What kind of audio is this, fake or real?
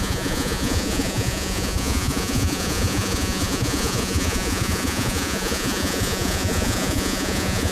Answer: fake